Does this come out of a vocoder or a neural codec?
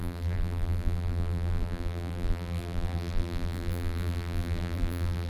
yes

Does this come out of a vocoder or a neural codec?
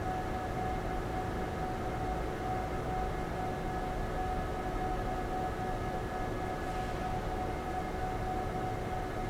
no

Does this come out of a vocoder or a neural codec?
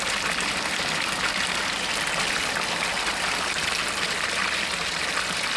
no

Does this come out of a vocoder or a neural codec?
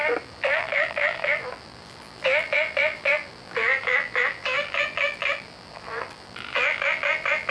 yes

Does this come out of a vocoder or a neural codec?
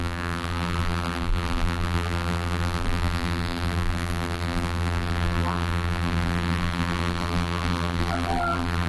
yes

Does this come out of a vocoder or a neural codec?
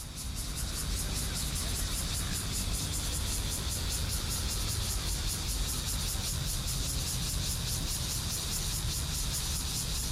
no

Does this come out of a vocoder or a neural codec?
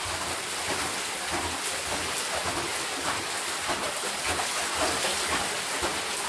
no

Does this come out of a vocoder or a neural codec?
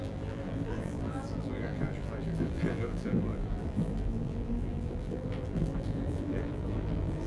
yes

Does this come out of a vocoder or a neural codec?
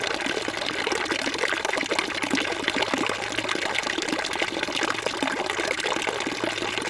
no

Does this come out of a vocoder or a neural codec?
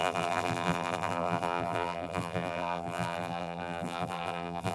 yes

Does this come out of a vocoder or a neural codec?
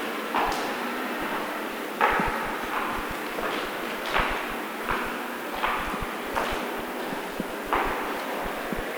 yes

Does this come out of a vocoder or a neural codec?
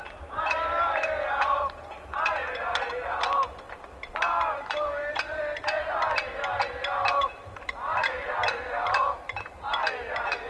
yes